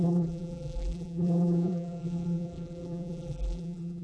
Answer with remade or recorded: remade